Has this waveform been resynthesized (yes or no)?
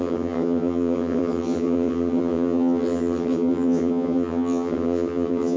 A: yes